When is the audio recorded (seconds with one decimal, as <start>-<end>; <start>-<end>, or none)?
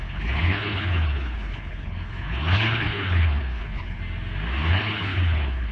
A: 4.0-4.7